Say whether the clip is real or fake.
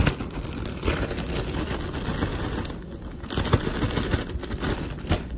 real